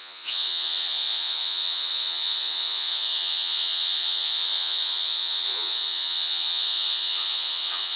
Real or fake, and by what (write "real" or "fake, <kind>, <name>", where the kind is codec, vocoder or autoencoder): fake, vocoder, Vocos